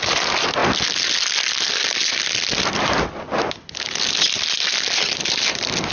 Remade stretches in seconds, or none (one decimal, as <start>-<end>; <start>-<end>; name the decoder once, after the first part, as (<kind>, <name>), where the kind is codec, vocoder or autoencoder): none